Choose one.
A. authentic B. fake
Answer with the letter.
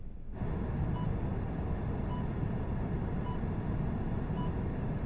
A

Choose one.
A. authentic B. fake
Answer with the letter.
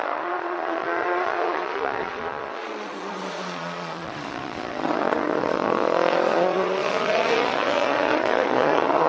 B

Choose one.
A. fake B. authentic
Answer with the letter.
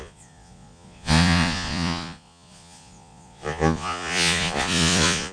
A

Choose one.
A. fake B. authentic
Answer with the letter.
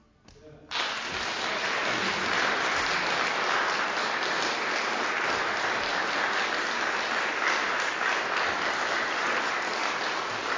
B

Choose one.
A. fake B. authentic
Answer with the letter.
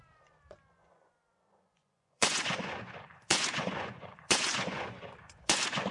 A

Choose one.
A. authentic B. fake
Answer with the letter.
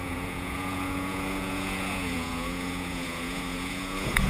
B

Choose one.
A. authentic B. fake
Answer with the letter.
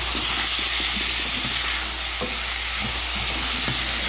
A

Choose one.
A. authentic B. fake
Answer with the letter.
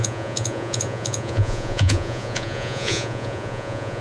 B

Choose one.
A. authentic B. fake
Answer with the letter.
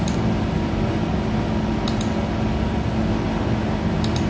A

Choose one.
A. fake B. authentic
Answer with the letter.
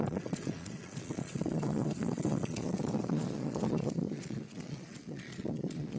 A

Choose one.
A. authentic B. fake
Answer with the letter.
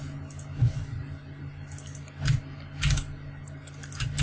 A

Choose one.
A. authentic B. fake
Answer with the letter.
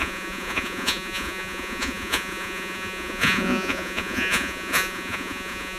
B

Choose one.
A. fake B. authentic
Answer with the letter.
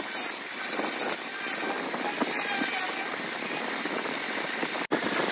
B